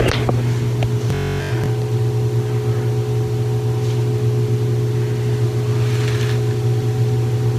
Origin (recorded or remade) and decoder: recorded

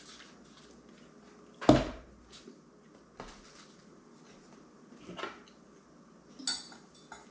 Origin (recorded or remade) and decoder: recorded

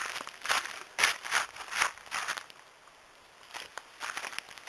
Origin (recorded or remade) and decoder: recorded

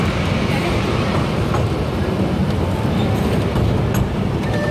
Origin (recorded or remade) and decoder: recorded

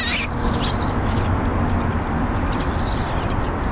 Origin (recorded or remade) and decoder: recorded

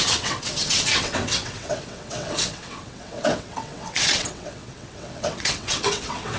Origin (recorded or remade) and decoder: remade, vocoder, WaveNeXt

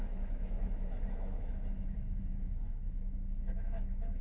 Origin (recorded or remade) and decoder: remade, autoencoder, DAC-VAE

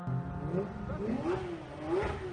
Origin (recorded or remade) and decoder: recorded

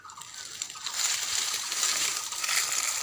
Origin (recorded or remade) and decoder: recorded